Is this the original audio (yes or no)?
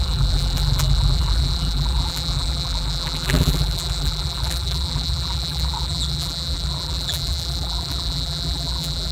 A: no